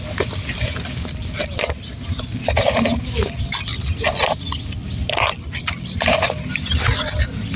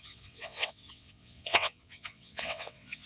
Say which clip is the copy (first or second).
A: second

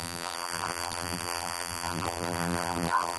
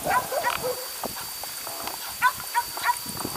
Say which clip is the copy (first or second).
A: first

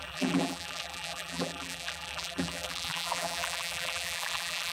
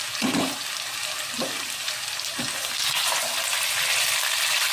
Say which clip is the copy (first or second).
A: first